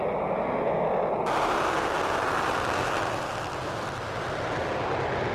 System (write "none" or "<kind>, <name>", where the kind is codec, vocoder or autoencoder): none